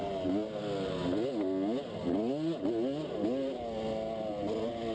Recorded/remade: recorded